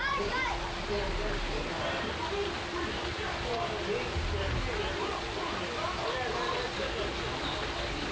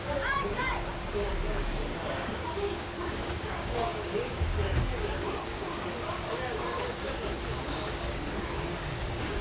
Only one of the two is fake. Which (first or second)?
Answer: second